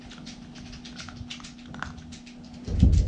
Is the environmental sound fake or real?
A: real